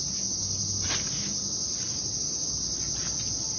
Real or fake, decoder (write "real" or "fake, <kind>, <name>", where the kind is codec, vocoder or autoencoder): real